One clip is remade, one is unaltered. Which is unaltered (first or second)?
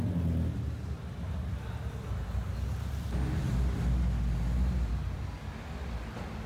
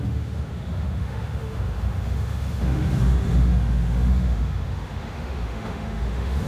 first